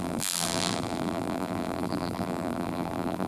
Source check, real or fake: fake